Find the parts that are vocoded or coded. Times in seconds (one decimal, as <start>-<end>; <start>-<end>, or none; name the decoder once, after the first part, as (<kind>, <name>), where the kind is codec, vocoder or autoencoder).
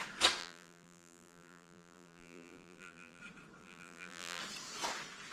0.4-3.2 (vocoder, BigVGAN v2); 3.6-4.4